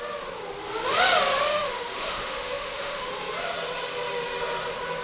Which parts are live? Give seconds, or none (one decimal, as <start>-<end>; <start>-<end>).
0.0-1.5; 3.1-5.0